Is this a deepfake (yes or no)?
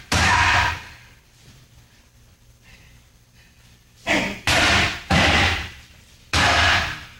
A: yes